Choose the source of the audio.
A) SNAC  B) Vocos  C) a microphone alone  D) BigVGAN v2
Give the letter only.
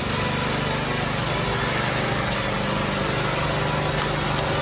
C